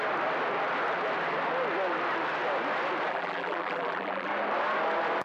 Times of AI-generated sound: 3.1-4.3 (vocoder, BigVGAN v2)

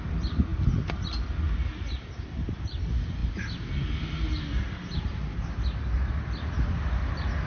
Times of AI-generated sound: none

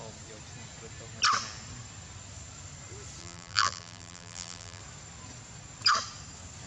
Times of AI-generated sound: 3.2-4.8 (vocoder, BigVGAN v2)